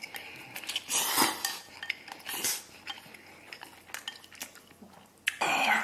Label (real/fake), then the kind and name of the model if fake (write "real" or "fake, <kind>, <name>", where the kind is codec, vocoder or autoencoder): real